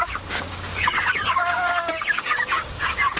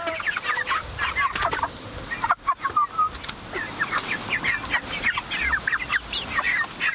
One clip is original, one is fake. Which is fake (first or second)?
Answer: first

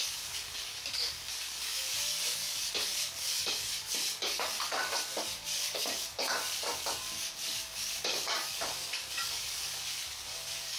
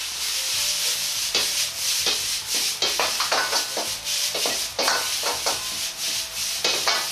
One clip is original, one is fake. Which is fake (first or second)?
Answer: first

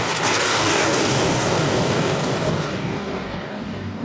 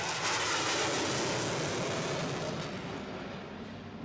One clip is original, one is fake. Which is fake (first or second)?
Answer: first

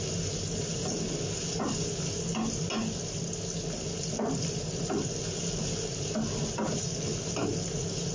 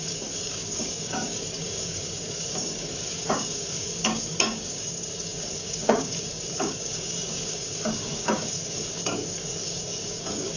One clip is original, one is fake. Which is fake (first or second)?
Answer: second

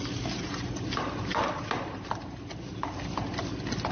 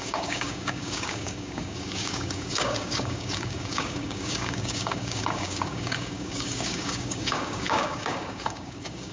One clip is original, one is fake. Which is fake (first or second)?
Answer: second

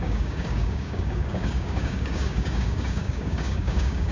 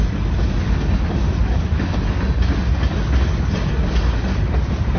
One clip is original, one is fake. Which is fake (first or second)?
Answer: first